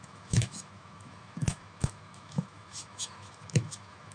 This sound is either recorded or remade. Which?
remade